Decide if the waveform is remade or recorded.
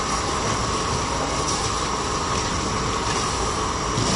recorded